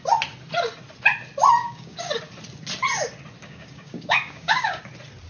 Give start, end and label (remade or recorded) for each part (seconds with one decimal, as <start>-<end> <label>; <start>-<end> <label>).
0.0-1.6 recorded; 1.6-2.1 remade; 2.1-3.4 recorded; 3.4-4.8 remade; 4.8-5.3 recorded